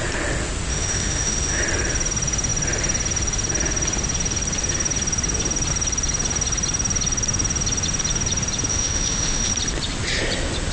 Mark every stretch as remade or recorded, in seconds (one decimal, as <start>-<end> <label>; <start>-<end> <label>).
0.0-0.7 recorded; 0.7-1.6 remade; 1.6-8.7 recorded; 8.7-9.5 remade; 9.5-10.7 recorded